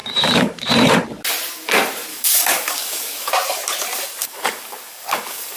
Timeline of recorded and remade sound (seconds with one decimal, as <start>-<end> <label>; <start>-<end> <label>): 0.0-0.7 remade; 0.7-2.1 recorded; 2.1-3.3 remade; 3.3-4.2 recorded; 4.2-5.6 remade

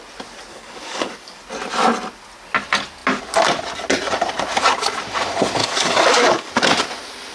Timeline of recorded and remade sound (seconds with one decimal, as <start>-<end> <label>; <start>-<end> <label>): 0.0-0.5 recorded; 0.5-1.4 remade; 1.4-5.6 recorded; 5.6-6.5 remade; 6.5-7.3 recorded